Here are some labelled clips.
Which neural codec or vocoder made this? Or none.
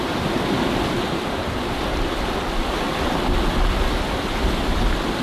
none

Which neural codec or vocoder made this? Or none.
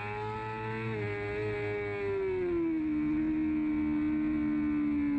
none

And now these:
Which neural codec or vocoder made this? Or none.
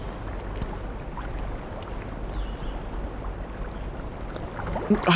none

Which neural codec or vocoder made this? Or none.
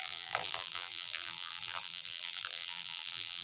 vocoder, BigVGAN v2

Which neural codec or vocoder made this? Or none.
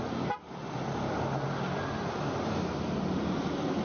none